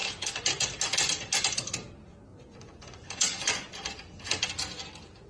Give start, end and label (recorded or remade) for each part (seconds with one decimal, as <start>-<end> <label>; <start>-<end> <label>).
0.0-2.3 recorded; 2.3-3.7 remade; 3.7-5.3 recorded